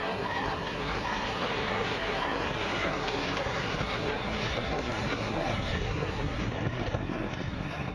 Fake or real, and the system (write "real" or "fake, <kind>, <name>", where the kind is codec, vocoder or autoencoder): fake, codec, SNAC